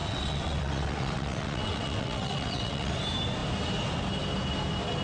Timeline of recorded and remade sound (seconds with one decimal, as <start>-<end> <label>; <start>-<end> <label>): 0.0-2.9 remade; 2.9-5.0 recorded